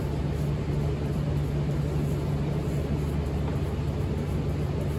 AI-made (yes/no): no